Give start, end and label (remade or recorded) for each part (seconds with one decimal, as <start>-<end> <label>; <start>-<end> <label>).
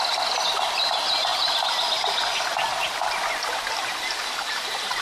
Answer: 0.0-5.0 recorded